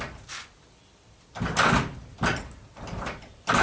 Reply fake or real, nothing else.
real